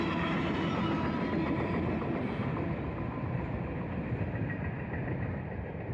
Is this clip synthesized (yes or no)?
no